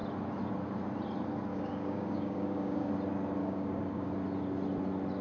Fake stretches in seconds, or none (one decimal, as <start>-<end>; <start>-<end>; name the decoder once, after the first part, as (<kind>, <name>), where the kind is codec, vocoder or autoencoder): 1.5-2.9 (codec, DAC); 3.4-4.1